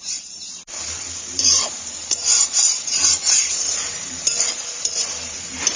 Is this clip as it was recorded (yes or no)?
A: no